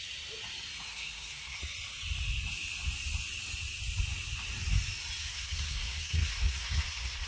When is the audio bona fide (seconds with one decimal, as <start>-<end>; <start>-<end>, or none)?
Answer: 0.0-0.9; 1.6-5.3